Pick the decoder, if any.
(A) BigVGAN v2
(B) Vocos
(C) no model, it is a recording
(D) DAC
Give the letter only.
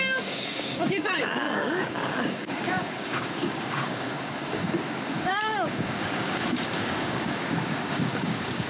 D